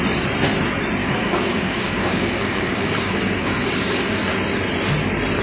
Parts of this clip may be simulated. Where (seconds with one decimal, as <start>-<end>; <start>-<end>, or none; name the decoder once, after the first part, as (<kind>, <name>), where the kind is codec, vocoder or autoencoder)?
1.0-4.2 (codec, DAC)